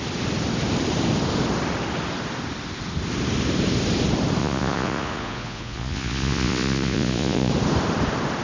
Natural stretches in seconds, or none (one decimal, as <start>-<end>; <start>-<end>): 0.0-4.4; 7.5-8.4